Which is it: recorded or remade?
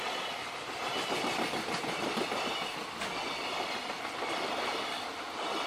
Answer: recorded